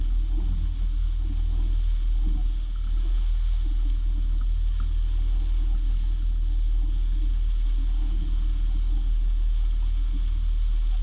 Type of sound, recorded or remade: recorded